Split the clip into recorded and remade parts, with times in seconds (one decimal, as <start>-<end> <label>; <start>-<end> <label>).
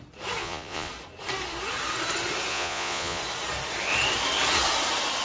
0.0-0.4 recorded; 0.4-0.9 remade; 0.9-2.5 recorded; 2.5-3.2 remade; 3.2-5.2 recorded